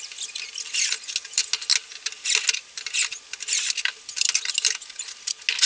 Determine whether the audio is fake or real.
real